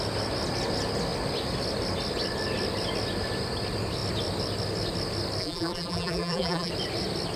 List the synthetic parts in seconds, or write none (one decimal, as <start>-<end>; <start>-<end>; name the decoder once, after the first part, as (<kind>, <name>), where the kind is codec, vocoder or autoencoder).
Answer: 5.4-6.7 (vocoder, BigVGAN v2)